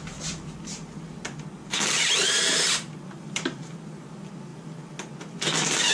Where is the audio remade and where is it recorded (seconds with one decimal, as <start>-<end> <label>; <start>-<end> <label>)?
0.0-2.2 recorded; 2.2-3.7 remade; 3.7-5.9 recorded